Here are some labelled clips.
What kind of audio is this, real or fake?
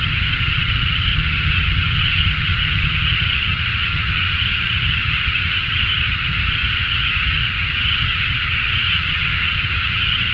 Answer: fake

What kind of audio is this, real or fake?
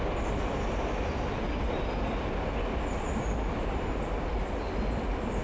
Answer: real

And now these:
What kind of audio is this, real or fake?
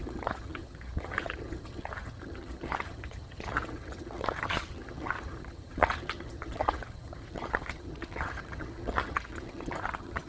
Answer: fake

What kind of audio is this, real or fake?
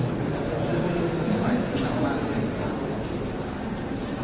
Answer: real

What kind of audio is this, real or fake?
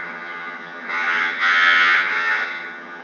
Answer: fake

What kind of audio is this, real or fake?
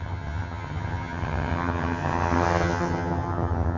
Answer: fake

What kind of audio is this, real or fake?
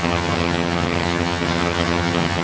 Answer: fake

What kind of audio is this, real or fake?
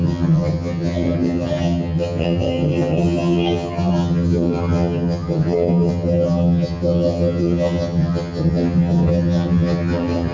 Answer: fake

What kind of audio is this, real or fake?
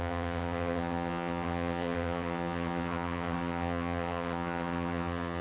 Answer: fake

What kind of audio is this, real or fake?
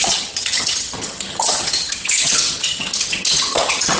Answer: fake